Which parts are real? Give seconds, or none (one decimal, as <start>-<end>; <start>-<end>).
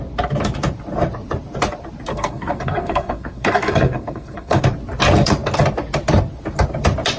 0.0-2.1; 4.6-7.2